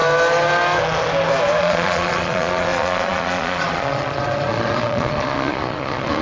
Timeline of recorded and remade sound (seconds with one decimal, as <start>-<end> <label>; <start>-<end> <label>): 0.0-1.6 recorded; 1.6-6.2 remade